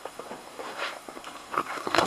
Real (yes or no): no